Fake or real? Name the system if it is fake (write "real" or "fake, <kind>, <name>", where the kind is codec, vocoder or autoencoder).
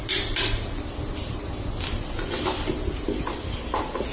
real